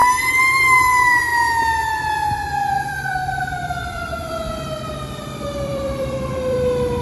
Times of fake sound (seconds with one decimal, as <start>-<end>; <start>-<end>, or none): 0.0-1.3; 2.7-7.0

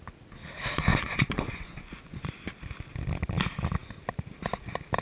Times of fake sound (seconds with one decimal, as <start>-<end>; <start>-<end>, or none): 0.9-2.3

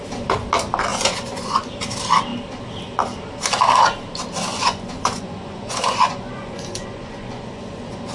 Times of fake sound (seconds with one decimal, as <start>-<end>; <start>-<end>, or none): 0.9-1.7; 4.5-8.1

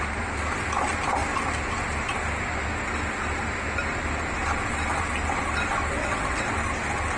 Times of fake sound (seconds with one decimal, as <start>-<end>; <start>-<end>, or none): 6.0-6.5

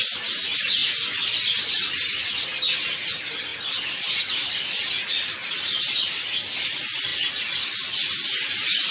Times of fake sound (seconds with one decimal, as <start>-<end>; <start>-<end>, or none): none

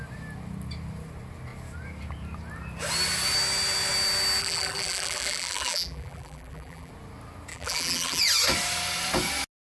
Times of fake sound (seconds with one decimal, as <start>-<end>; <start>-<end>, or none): 4.4-6.9; 7.5-8.2

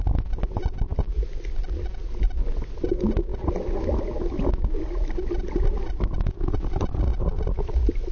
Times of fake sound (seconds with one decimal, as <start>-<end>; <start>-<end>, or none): none

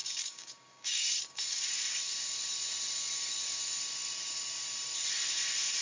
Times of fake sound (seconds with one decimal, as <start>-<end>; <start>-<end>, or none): 0.0-1.6